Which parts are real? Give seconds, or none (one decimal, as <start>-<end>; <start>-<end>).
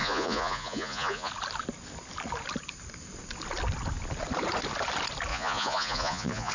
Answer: 1.3-5.3